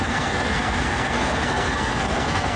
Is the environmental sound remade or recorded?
remade